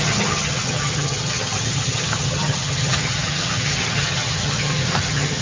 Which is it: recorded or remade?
remade